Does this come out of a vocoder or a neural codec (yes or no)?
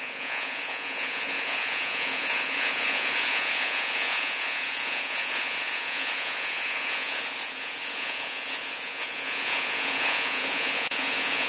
yes